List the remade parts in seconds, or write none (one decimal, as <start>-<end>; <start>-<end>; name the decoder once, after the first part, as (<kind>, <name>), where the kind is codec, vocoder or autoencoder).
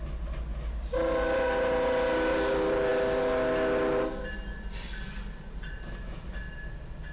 none